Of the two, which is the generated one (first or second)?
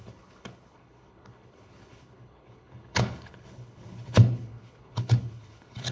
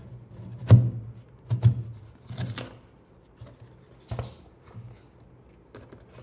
first